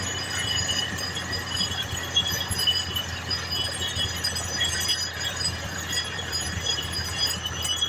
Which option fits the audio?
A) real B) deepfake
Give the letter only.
B